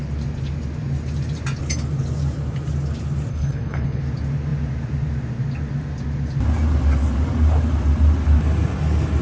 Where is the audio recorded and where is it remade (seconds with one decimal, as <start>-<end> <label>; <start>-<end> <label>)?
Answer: 0.0-3.3 recorded; 3.3-4.0 remade; 4.0-9.2 recorded